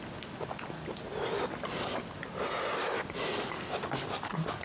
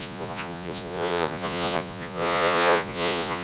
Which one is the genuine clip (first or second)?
first